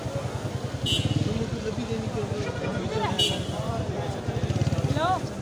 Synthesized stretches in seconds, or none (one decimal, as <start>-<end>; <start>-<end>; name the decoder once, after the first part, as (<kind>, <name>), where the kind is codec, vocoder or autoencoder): 2.7-4.2 (vocoder, BigVGAN v2)